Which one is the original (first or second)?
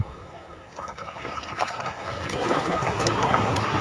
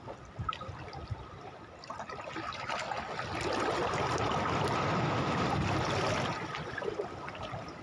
second